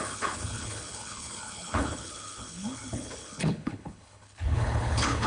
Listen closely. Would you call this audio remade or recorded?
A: remade